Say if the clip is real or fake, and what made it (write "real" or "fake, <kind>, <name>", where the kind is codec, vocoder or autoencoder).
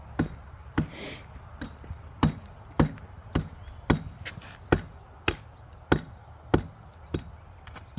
real